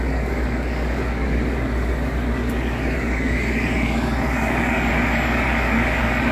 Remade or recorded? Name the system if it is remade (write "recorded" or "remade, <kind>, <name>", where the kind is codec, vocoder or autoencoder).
remade, codec, DAC